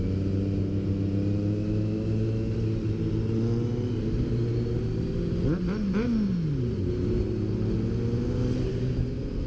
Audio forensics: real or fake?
real